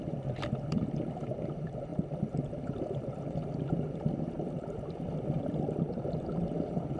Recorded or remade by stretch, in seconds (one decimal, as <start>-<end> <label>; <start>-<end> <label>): 0.0-7.0 remade